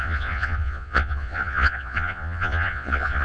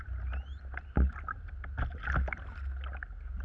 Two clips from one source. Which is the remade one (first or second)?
first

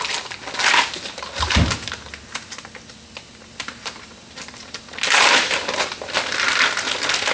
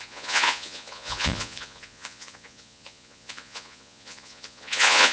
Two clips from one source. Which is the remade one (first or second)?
second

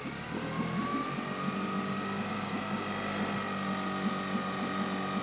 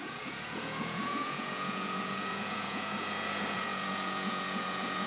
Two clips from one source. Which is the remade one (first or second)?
second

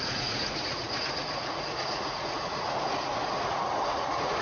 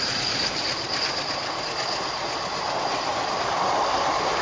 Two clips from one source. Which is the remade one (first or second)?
first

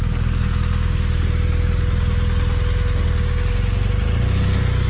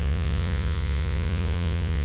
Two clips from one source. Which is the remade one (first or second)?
second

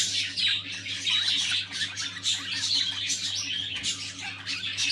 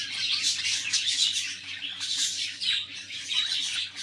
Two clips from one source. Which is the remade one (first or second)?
second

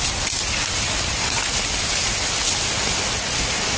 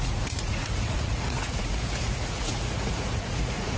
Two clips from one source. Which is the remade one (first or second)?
second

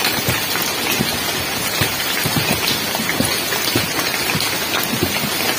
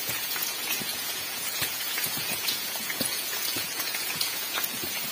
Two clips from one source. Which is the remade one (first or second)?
second